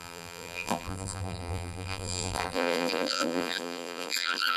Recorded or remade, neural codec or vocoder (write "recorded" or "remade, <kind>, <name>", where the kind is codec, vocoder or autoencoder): remade, vocoder, BigVGAN v2